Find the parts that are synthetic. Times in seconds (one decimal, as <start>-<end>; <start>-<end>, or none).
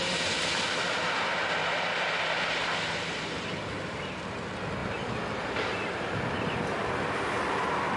none